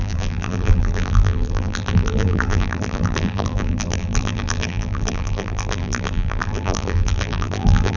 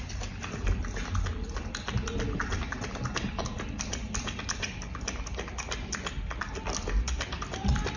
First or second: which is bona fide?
second